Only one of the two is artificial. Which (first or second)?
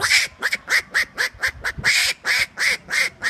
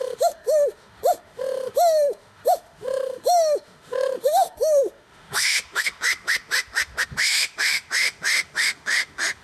second